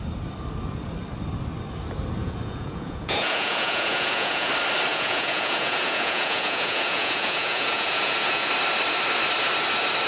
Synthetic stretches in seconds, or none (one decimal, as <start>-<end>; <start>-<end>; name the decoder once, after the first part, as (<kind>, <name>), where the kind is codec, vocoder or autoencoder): 2.2-4.5 (vocoder, Vocos); 4.9-8.5

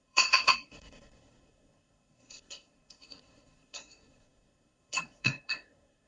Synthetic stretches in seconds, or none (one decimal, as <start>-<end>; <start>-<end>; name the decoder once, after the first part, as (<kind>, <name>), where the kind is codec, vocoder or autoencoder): 0.0-6.1 (codec, SNAC)